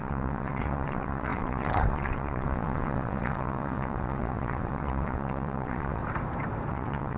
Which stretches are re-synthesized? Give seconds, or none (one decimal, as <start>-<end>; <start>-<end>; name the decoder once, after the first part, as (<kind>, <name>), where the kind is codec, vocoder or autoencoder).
0.0-6.0 (vocoder, WaveNeXt); 6.7-7.2